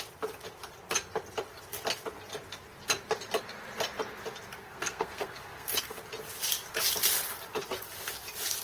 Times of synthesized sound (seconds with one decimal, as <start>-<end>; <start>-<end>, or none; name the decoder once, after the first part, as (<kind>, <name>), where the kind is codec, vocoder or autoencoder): 4.6-6.0 (codec, SNAC)